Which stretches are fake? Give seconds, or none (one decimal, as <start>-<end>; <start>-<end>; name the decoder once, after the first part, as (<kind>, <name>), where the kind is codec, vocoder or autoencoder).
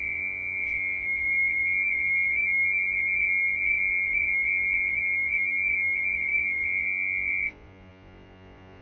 0.0-8.8 (vocoder, Vocos)